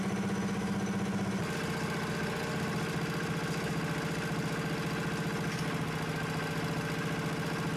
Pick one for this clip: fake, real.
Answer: real